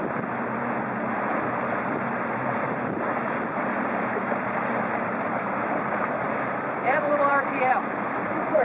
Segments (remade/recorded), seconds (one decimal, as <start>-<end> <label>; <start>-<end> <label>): 0.0-8.6 remade